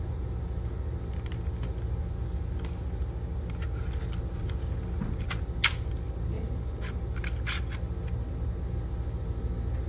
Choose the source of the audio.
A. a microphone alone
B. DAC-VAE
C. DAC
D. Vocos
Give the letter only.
A